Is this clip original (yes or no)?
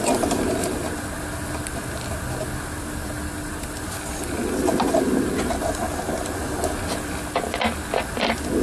yes